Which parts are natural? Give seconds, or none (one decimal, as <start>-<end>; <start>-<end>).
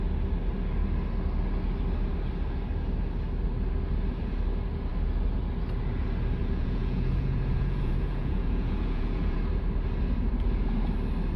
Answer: 0.0-6.4; 9.4-11.4